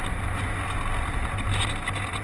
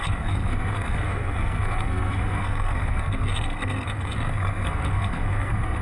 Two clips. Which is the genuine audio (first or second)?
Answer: first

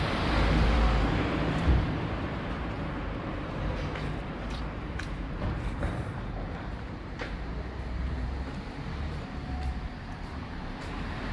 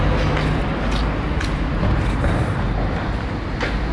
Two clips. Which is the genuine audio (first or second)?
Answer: second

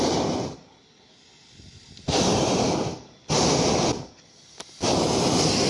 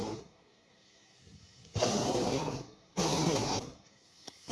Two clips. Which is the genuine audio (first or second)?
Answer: first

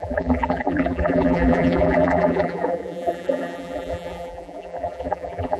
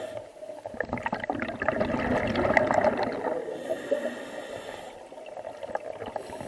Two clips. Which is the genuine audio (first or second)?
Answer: second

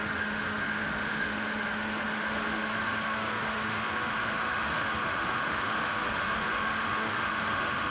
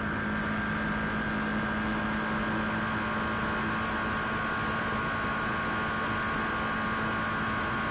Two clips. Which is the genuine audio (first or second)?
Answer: second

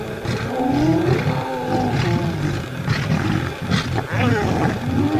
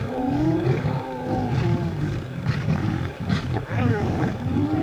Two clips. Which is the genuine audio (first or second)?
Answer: first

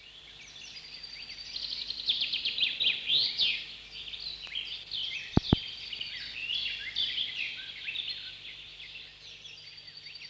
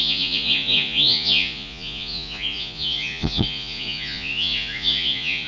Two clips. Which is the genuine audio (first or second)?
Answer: first